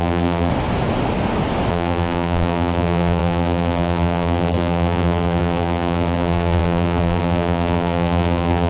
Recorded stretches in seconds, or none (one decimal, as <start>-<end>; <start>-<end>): 0.5-1.7